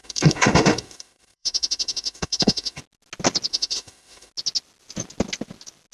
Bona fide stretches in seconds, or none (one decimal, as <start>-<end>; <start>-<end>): 2.8-3.5; 4.3-5.9

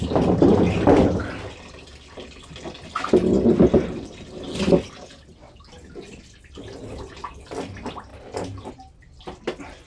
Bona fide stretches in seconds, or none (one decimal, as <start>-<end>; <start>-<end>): 0.0-9.9

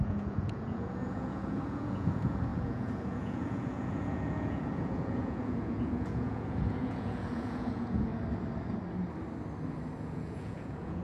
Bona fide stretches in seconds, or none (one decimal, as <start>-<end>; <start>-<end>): 8.1-10.0

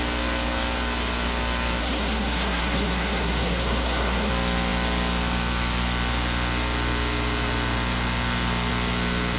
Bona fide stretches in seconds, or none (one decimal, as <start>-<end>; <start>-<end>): 0.0-1.8; 4.3-9.4

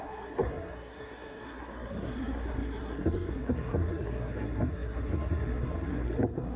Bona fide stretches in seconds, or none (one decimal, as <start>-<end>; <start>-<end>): none

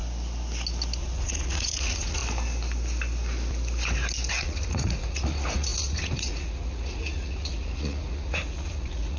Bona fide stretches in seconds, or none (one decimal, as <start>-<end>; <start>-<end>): 0.0-1.0; 2.2-4.3